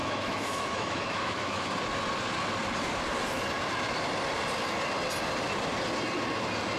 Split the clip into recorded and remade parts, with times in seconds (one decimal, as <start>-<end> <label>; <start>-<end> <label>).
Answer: 0.0-1.7 remade; 1.7-6.8 recorded